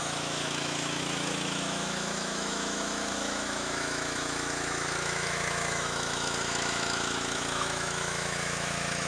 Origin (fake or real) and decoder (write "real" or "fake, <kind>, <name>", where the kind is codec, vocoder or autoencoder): fake, autoencoder, DAC-VAE